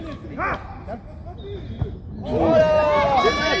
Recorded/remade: recorded